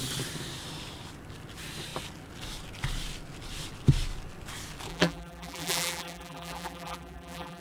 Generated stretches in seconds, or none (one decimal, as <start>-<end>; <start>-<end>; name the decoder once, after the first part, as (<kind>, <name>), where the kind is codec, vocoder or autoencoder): 4.9-7.6 (vocoder, BigVGAN v2)